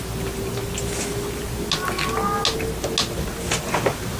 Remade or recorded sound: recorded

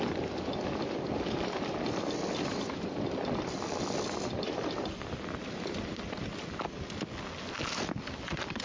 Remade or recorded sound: recorded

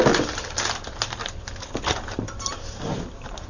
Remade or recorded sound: recorded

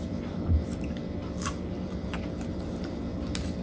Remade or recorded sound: recorded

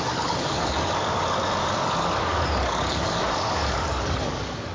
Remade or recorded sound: remade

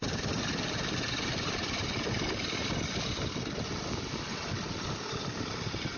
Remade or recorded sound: recorded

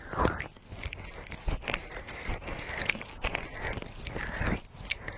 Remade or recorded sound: recorded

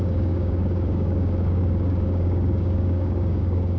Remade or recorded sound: remade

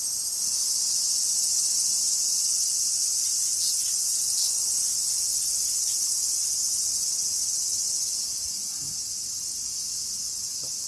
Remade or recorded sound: recorded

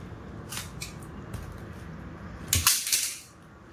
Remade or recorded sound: recorded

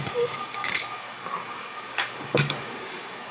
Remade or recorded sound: remade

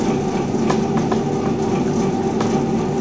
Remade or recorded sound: recorded